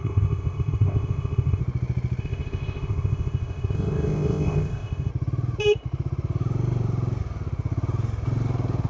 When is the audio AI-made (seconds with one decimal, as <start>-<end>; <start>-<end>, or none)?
0.0-1.6; 2.2-5.1